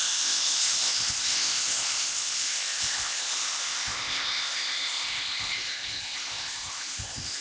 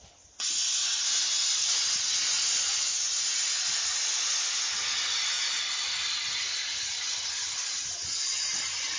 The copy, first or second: first